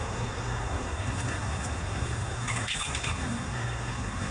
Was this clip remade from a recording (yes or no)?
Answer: yes